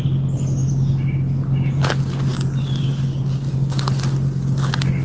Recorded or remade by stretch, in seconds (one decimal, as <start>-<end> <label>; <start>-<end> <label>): 0.0-5.0 recorded